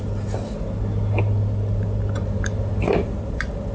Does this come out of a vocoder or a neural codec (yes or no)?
no